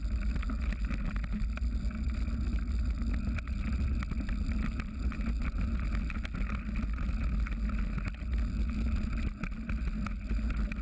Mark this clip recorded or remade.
recorded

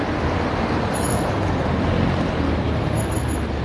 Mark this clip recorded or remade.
recorded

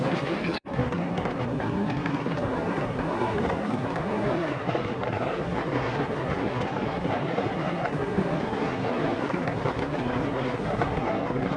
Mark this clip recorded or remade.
remade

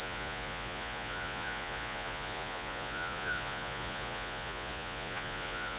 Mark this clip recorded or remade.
remade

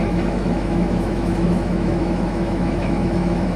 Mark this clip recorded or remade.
remade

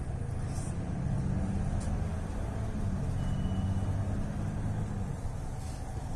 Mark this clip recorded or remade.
recorded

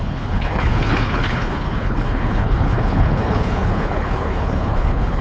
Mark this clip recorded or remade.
remade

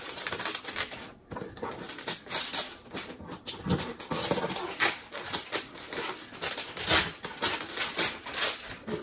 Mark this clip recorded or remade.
recorded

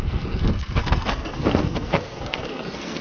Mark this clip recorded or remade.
remade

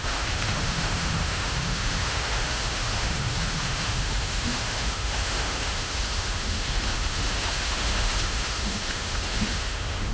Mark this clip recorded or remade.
remade